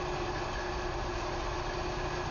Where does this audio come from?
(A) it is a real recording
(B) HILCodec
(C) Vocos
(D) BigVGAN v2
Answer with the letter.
A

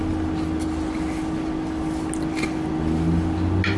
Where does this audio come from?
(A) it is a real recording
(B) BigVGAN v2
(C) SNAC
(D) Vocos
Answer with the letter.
A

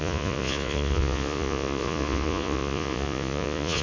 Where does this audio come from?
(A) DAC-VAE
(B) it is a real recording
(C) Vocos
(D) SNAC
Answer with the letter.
C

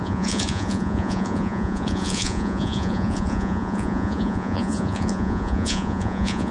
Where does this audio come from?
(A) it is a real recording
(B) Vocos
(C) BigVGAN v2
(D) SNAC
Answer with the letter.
B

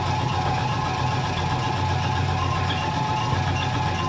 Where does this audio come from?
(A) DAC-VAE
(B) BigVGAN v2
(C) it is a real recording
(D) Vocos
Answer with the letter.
C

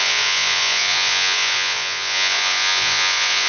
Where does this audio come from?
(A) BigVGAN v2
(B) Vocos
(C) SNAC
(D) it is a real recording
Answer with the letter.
B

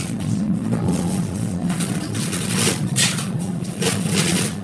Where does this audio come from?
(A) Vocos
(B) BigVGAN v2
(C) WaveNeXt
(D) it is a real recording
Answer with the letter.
A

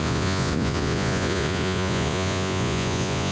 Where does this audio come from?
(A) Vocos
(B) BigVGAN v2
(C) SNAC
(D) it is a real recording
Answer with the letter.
A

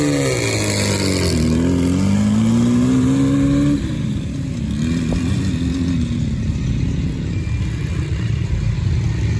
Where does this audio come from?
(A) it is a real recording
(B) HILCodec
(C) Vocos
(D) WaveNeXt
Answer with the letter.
A